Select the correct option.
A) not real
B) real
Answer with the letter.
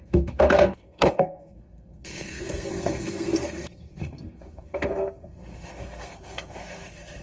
A